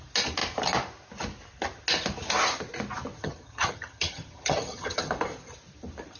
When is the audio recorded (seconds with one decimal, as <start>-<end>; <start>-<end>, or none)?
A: 0.0-3.2; 5.1-6.2